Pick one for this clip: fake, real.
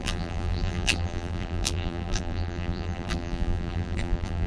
fake